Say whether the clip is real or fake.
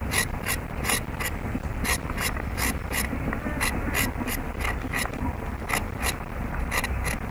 real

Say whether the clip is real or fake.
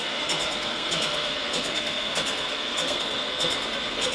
fake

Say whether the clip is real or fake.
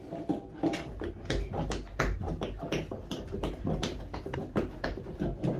real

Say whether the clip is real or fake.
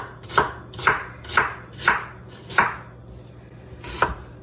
real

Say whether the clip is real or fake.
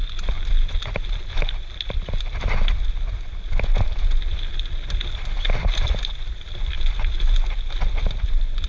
real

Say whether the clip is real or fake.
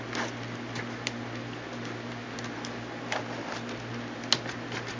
real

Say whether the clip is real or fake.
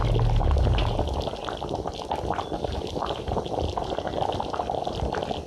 real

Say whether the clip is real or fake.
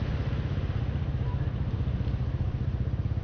real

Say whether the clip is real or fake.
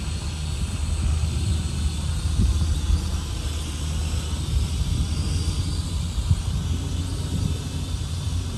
real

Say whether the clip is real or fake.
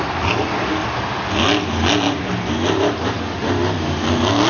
real